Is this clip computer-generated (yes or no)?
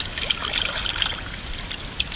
no